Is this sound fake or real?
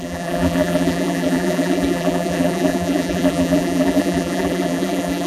fake